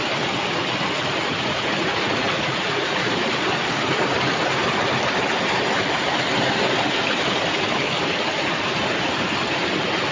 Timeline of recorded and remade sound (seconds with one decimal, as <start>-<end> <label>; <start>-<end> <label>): 0.0-1.3 recorded; 1.3-3.3 remade; 3.3-10.1 recorded